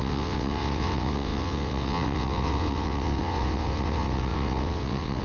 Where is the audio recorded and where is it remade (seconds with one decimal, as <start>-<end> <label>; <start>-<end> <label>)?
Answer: 0.0-5.2 remade